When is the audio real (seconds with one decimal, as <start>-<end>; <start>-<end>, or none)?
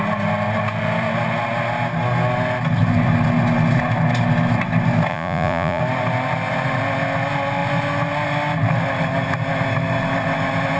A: 0.0-5.1; 5.8-10.8